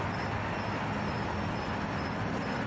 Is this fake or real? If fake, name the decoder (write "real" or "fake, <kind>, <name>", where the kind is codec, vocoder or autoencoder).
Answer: real